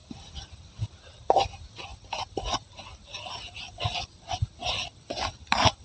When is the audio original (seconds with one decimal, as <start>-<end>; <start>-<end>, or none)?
0.0-5.8